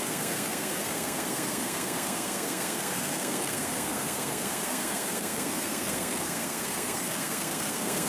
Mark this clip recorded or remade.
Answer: remade